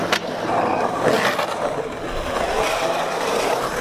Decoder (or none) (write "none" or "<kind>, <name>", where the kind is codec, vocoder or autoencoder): none